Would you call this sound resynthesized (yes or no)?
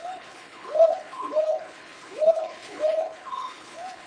yes